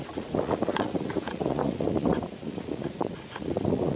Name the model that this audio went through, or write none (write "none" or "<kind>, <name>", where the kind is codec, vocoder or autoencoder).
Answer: vocoder, Vocos